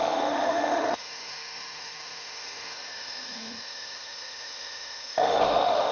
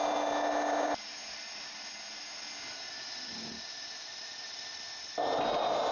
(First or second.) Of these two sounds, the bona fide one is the second